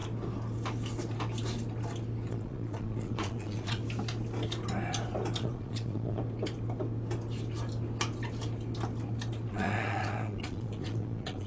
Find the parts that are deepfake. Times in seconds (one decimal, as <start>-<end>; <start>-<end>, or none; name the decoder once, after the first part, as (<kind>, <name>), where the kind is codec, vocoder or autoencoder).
2.3-3.8 (vocoder, Vocos); 5.4-6.2; 9.5-11.5